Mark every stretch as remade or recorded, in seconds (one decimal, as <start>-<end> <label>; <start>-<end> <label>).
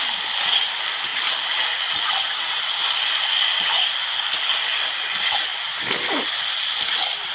0.0-5.5 recorded; 5.5-7.3 remade